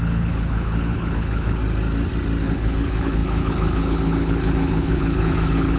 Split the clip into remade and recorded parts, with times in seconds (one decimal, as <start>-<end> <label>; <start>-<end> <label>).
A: 0.0-1.6 remade; 1.6-2.4 recorded; 2.4-5.8 remade